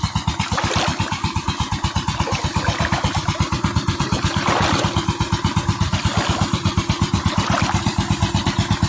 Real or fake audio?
fake